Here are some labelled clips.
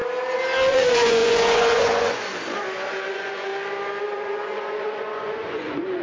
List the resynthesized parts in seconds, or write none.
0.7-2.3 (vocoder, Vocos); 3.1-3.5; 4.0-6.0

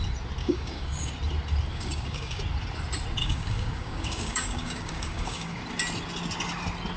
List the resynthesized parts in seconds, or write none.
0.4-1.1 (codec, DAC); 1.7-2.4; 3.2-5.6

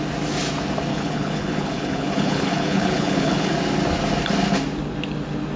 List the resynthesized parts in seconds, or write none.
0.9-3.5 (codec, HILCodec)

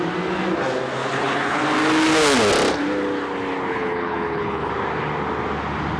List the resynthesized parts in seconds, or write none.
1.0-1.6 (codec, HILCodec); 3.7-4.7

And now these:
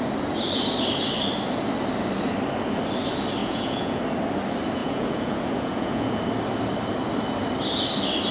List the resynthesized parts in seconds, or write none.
3.4-4.0 (vocoder, Vocos); 4.8-6.2

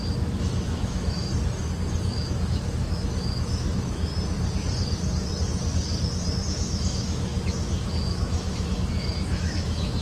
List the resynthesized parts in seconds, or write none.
0.0-1.3 (autoencoder, DAC-VAE); 2.1-4.1; 6.5-10.0

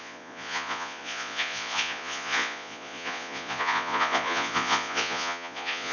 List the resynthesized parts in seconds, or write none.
0.0-5.9 (vocoder, Vocos)